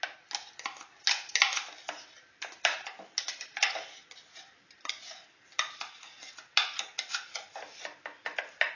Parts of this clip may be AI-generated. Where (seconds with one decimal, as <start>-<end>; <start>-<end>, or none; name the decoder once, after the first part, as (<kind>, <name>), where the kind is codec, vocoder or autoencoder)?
4.3-4.9 (vocoder, BigVGAN v2)